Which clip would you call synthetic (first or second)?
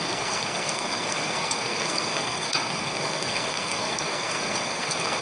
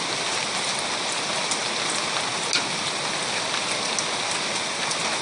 first